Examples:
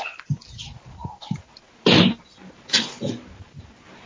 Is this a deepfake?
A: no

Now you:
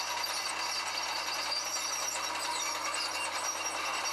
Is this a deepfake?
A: no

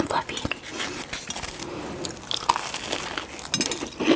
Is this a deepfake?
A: no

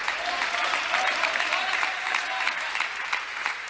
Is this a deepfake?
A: yes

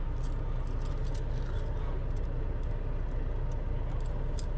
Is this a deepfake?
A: no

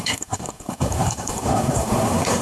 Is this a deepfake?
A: yes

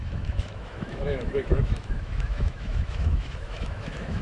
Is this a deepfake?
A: yes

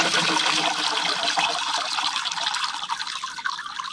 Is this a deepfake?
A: no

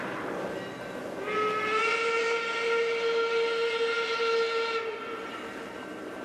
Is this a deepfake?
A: no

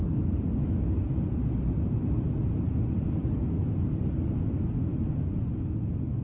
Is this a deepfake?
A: no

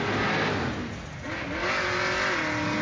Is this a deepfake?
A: no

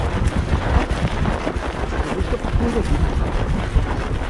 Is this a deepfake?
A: no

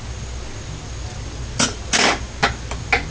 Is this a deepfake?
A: no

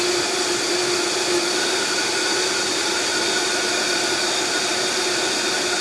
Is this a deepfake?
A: no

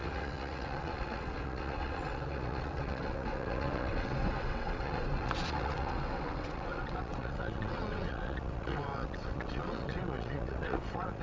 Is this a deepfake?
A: yes